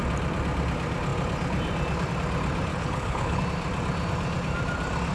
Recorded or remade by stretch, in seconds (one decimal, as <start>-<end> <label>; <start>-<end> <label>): 0.0-2.7 recorded; 2.7-3.4 remade; 3.4-5.1 recorded